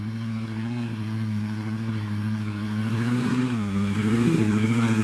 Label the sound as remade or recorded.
remade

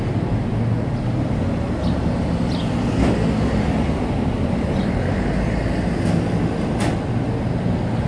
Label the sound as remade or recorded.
recorded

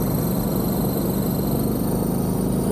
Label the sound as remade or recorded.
recorded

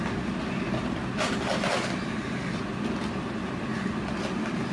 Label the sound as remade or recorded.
recorded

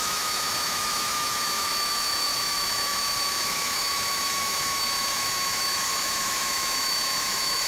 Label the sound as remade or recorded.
remade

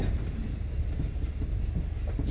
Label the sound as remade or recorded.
recorded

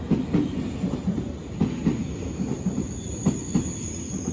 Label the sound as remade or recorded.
recorded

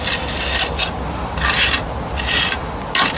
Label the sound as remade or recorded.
recorded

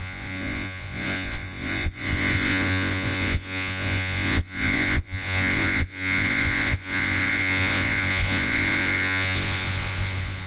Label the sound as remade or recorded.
remade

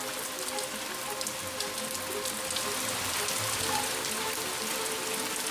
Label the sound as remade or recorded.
recorded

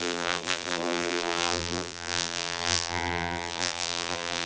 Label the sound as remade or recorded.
remade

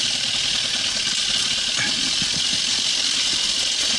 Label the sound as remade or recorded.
recorded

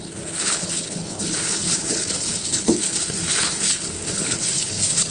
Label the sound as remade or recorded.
remade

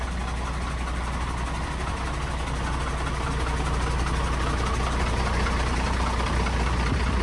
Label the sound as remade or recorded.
recorded